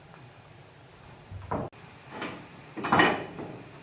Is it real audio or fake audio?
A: real